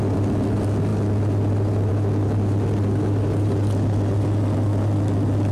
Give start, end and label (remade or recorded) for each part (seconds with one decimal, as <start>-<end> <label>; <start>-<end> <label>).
0.0-5.5 recorded

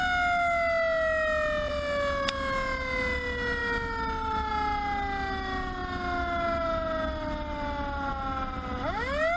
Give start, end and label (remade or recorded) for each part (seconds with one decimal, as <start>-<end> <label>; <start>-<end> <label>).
0.0-9.4 recorded